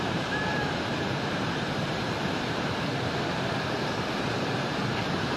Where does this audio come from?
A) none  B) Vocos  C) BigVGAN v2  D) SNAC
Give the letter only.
C